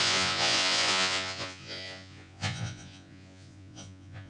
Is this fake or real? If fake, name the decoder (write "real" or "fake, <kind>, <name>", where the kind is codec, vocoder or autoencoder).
fake, vocoder, Vocos